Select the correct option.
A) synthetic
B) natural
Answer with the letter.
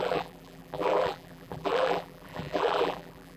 A